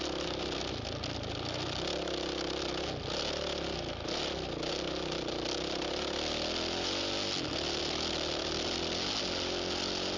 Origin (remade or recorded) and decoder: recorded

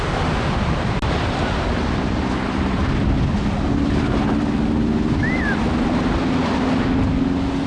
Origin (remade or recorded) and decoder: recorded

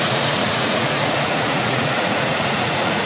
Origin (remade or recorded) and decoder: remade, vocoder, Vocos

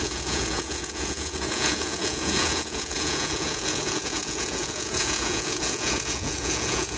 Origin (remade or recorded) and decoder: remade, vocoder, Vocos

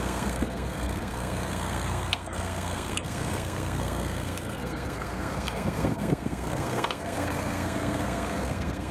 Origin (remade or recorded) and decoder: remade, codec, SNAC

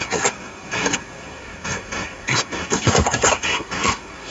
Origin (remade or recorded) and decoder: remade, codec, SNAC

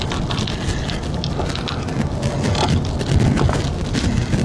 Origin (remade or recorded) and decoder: recorded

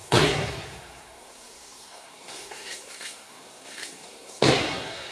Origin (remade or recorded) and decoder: remade, codec, SNAC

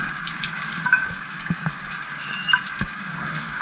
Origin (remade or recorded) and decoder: remade, codec, DAC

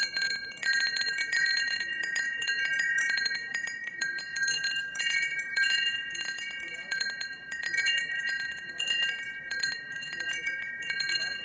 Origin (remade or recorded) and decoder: remade, vocoder, Vocos